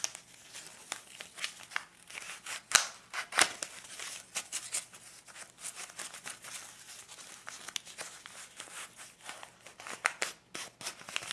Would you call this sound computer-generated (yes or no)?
no